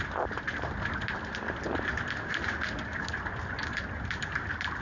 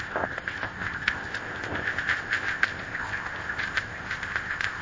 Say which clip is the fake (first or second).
second